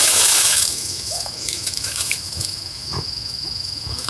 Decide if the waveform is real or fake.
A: fake